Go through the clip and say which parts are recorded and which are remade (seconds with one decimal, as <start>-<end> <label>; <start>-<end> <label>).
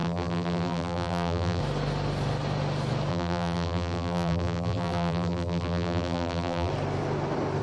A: 0.0-1.6 remade; 1.6-3.1 recorded; 3.1-6.7 remade; 6.7-7.6 recorded